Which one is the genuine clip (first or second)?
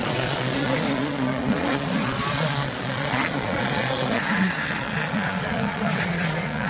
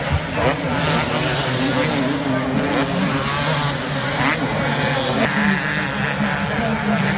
second